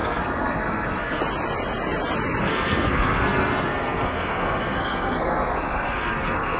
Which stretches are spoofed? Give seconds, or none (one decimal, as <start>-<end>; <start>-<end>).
0.0-1.2; 2.4-6.6